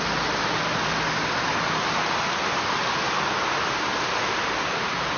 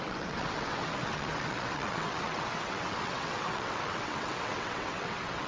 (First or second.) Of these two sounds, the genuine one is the first